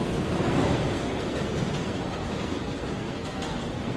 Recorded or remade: remade